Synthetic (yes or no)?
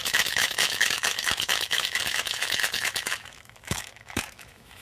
yes